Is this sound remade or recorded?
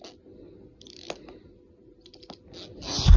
recorded